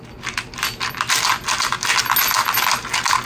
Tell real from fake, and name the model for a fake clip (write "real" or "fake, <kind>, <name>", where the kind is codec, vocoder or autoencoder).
real